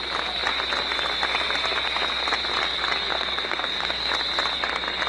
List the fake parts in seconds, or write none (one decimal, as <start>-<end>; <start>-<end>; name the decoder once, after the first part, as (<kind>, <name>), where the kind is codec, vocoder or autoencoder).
3.1-4.1 (codec, SNAC)